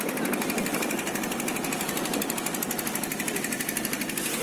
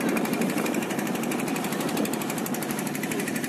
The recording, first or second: first